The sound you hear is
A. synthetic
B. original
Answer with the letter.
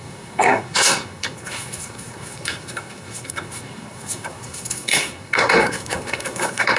A